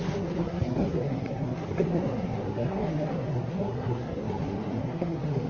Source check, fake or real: fake